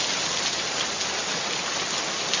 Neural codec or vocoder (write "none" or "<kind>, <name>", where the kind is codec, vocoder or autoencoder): none